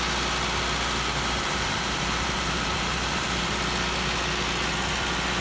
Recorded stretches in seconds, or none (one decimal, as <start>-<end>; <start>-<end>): 0.0-1.1; 3.5-5.4

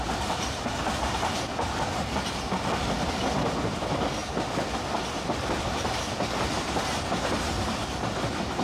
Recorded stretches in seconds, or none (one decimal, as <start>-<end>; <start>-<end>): 0.0-8.6

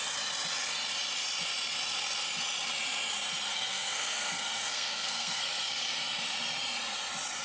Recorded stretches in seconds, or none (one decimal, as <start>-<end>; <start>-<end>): 0.0-3.5; 5.4-7.4

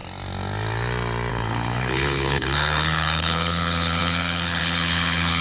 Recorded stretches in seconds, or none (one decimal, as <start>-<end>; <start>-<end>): 0.0-1.3

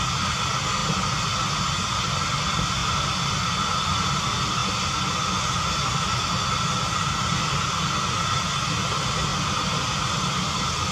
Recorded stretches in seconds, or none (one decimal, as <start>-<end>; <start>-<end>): 0.0-2.8; 3.3-9.3; 10.1-10.9